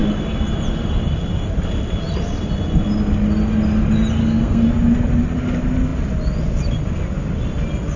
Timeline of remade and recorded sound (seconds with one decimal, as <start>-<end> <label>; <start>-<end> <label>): 0.0-4.2 recorded; 4.2-4.7 remade; 4.7-8.0 recorded